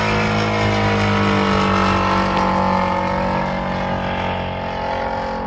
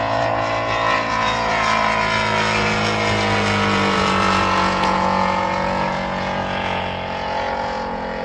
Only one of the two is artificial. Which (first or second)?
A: second